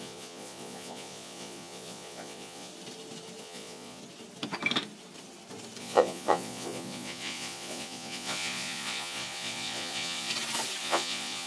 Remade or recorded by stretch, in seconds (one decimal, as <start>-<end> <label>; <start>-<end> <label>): 0.0-2.7 remade; 2.7-3.4 recorded; 3.4-4.0 remade; 4.0-5.8 recorded; 5.8-10.3 remade; 10.3-10.8 recorded; 10.8-11.5 remade